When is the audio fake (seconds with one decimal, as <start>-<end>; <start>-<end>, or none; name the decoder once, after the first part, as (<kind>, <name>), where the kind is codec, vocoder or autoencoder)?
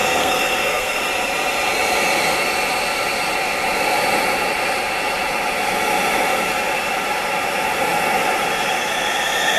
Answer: 0.0-1.0 (codec, SNAC)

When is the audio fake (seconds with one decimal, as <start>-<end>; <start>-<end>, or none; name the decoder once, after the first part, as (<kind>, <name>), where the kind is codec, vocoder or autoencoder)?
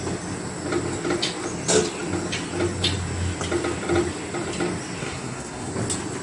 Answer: 5.0-5.7 (codec, SNAC)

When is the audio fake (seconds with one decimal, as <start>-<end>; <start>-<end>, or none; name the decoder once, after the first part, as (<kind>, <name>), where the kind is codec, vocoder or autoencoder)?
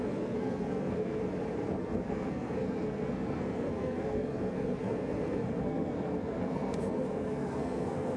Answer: 0.0-1.2 (codec, SNAC); 1.8-8.2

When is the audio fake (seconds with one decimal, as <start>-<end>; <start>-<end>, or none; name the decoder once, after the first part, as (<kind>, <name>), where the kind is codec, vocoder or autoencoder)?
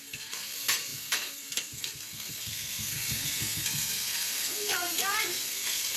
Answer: 0.0-6.0 (codec, SNAC)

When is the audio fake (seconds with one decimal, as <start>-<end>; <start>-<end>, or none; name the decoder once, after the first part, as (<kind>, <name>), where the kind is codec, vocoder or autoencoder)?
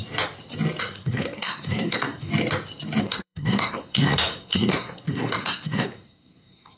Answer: 0.8-2.3 (codec, SNAC); 3.0-6.8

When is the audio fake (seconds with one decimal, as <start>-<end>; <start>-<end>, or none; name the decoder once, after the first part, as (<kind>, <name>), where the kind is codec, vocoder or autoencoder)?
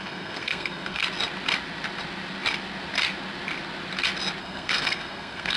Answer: 0.0-1.0 (codec, SNAC); 4.4-5.6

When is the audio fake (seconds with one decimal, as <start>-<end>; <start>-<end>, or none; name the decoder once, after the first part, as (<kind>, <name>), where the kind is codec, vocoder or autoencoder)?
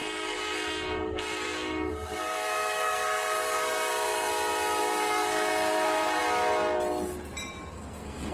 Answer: 0.0-4.3 (codec, SNAC); 4.8-6.2; 7.7-8.3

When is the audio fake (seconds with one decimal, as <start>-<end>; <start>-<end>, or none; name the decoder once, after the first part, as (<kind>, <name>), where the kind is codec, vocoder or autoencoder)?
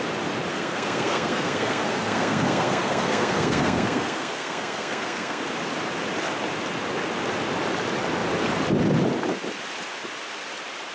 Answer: 0.5-5.4 (codec, SNAC)